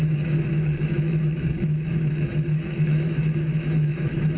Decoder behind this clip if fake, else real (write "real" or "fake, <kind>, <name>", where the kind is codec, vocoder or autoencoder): fake, autoencoder, DAC-VAE